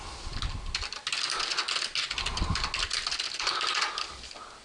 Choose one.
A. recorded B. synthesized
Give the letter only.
A